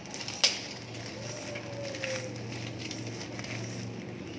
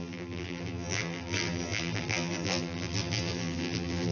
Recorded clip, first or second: first